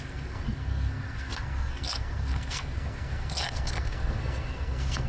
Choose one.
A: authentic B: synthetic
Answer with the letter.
B